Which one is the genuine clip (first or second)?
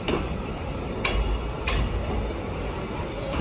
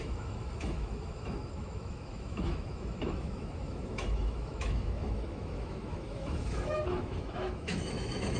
first